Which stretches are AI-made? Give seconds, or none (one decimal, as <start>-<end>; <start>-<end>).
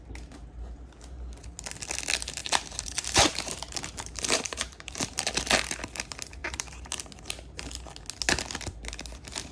2.4-5.4; 6.4-7.3